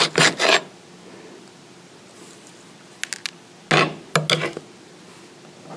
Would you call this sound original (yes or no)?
yes